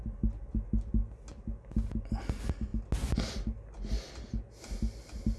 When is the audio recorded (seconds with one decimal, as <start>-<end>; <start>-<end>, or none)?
0.0-5.4